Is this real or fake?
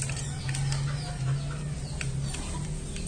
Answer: real